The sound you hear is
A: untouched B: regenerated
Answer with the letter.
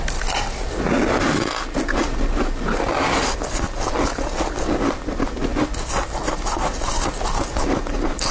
A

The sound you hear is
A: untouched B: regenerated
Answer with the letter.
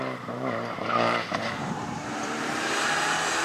B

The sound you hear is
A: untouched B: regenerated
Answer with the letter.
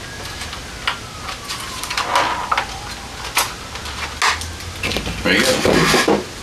A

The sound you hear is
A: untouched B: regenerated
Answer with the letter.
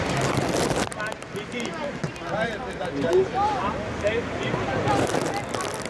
A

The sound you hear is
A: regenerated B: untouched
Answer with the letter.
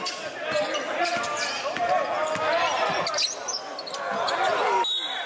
B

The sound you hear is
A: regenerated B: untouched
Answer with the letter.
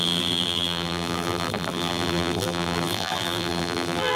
A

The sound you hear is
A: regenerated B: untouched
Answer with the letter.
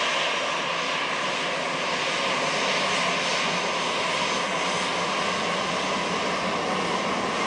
B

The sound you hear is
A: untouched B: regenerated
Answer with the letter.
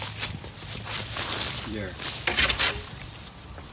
A